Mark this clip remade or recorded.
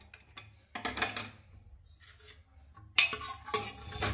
recorded